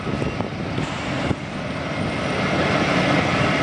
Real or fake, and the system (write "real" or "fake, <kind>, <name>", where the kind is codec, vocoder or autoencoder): real